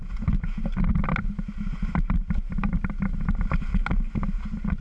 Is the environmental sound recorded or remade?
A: recorded